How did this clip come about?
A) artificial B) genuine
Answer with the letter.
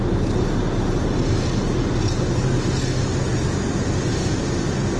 B